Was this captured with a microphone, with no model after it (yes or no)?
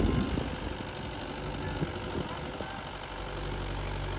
yes